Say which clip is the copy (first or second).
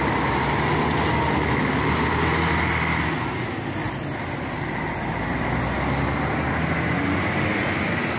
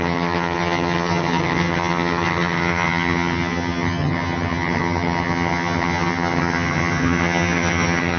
second